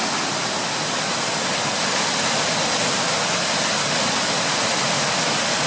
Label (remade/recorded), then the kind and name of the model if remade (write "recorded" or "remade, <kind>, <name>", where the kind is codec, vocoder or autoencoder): recorded